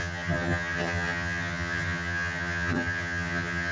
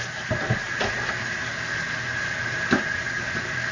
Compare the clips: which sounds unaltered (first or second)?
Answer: second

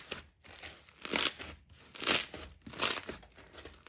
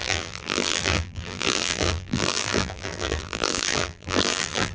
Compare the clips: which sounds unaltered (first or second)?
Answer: first